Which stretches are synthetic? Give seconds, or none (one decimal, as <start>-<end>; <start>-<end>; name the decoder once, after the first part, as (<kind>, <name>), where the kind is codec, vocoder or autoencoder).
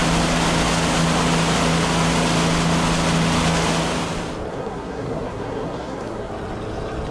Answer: 4.5-6.3 (codec, SNAC)